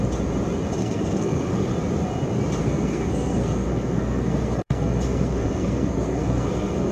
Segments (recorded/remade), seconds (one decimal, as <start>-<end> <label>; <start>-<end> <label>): 0.0-0.8 recorded; 0.8-1.7 remade; 1.7-2.6 recorded; 2.6-6.9 remade